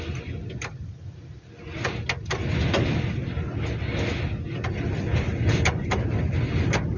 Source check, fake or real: real